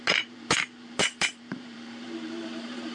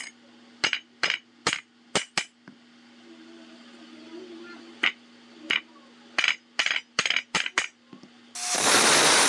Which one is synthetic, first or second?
first